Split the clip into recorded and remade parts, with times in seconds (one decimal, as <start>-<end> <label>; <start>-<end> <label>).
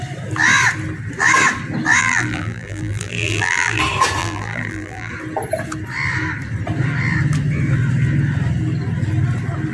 0.0-2.0 recorded; 2.0-3.8 remade; 3.8-4.2 recorded; 4.2-5.1 remade; 5.1-9.7 recorded